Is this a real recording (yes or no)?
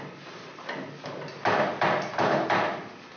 yes